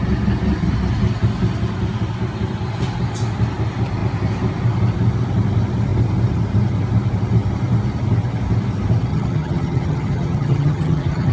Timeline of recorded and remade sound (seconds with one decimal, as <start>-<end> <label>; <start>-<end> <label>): 0.0-9.1 recorded; 9.1-11.3 remade